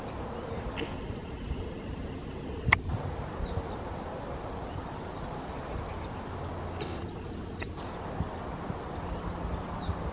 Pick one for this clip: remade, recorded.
recorded